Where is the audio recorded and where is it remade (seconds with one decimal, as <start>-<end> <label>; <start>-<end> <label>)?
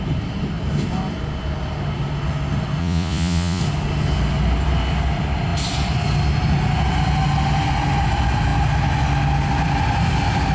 0.0-2.8 recorded; 2.8-3.6 remade; 3.6-10.5 recorded